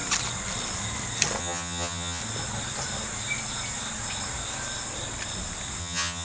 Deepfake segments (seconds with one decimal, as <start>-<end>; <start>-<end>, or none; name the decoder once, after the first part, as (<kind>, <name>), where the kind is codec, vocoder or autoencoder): 1.4-2.2 (vocoder, HiFi-GAN); 5.8-6.2